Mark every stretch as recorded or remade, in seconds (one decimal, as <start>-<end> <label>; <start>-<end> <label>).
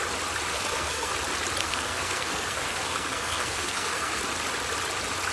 0.0-0.5 recorded; 0.5-1.1 remade; 1.1-1.6 recorded; 1.6-4.2 remade; 4.2-5.3 recorded